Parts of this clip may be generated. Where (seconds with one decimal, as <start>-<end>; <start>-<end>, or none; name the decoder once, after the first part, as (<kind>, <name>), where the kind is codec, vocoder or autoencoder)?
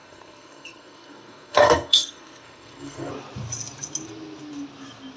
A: 0.0-3.1 (codec, SNAC)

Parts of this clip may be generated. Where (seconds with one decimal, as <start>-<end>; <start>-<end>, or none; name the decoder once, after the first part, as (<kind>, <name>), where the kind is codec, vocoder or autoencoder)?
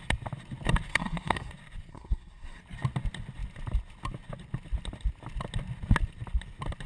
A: 0.9-1.5 (codec, SNAC); 1.9-2.6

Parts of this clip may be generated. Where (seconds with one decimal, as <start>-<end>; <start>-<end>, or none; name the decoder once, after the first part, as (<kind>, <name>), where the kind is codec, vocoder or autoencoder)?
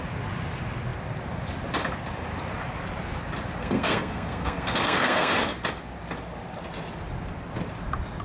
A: 3.6-5.3 (codec, SNAC)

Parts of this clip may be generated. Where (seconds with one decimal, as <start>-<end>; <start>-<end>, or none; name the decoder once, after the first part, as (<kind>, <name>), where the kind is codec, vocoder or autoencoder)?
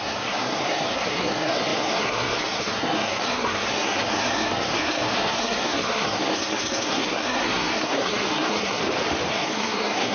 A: 0.0-8.8 (codec, SNAC); 9.3-10.1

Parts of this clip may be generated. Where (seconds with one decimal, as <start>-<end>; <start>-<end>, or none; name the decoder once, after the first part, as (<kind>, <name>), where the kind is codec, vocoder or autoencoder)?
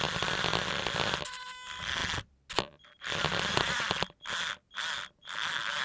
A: none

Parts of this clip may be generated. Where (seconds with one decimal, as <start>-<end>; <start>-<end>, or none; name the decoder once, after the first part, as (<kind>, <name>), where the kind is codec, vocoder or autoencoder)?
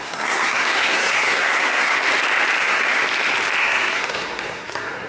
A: 0.0-2.0 (codec, SNAC); 2.6-3.0; 3.6-5.1